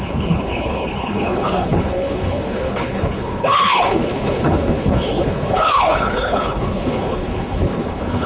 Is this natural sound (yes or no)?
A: no